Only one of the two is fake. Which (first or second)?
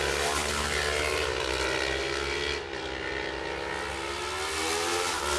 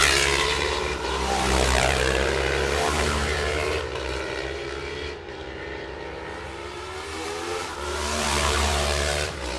second